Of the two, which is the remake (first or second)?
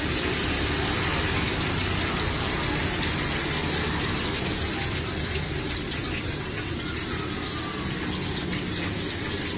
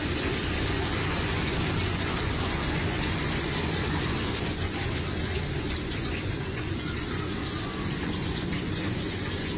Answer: second